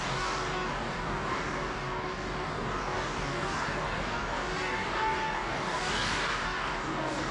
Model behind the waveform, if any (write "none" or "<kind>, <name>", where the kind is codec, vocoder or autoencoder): codec, DAC